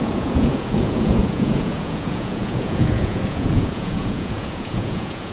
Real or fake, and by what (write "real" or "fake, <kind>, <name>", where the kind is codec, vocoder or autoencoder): fake, vocoder, Vocos